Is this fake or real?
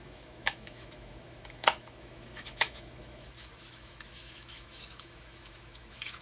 fake